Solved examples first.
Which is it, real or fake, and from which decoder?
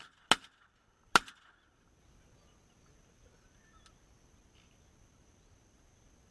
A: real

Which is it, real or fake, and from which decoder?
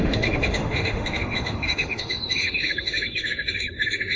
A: fake, autoencoder, DAC-VAE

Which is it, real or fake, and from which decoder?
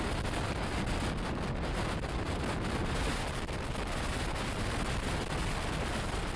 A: real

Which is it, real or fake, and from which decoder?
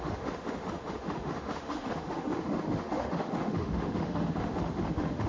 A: fake, autoencoder, DAC-VAE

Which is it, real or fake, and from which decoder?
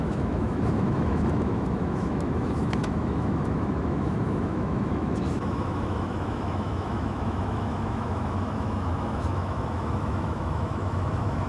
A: fake, autoencoder, DAC-VAE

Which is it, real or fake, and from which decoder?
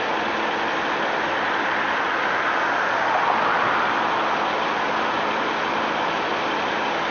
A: real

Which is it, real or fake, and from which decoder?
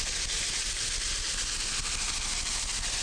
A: real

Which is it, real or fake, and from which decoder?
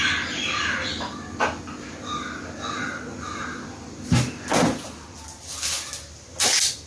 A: real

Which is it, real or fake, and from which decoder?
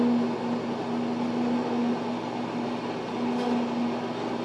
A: real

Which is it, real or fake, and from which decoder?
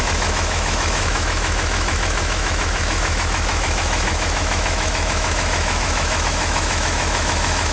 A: fake, autoencoder, DAC-VAE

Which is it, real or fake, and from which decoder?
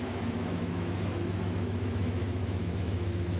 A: fake, autoencoder, DAC-VAE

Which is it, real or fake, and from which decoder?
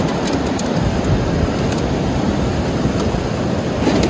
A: real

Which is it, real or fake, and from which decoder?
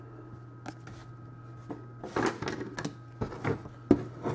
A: real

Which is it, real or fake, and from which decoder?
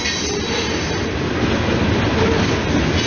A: real